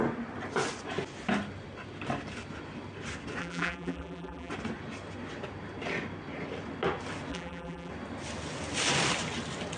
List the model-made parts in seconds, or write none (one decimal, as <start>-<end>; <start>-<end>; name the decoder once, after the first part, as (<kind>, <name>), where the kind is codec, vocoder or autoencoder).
3.4-4.5 (vocoder, BigVGAN v2); 7.3-7.9